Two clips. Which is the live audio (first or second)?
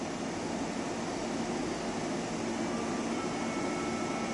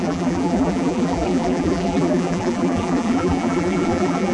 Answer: first